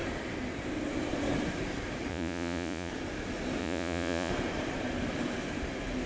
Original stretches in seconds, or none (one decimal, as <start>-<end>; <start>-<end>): 0.0-2.1; 2.9-3.6; 4.3-6.1